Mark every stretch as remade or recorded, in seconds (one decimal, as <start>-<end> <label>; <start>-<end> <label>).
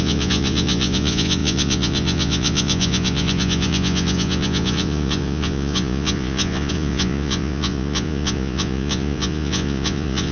0.0-10.3 remade